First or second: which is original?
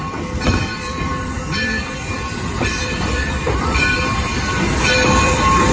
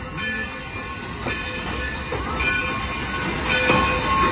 second